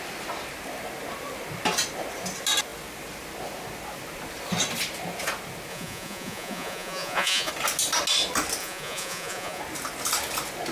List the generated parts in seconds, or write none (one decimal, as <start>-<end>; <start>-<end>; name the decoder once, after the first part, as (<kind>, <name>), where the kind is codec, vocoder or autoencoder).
5.7-7.5 (vocoder, Vocos); 8.6-9.6